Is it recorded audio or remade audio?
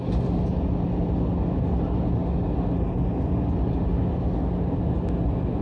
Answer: recorded